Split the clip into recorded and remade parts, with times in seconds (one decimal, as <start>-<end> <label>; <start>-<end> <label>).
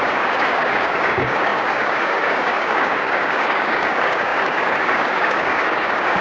0.0-6.2 remade